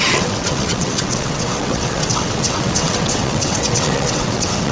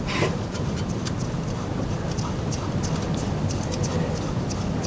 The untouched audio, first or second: second